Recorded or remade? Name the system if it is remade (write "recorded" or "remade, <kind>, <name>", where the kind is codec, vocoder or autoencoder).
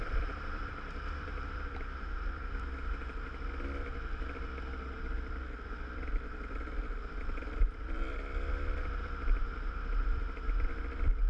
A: remade, vocoder, BigVGAN v2